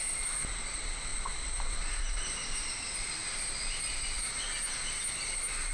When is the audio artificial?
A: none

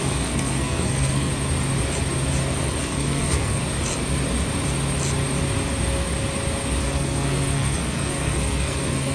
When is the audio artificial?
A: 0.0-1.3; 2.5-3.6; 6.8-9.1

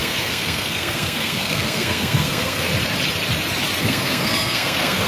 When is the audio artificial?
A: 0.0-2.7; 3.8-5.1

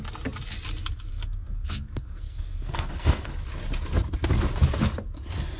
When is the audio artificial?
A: 1.1-3.3

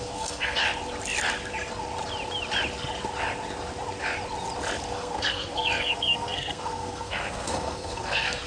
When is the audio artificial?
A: 0.0-0.6; 4.9-8.5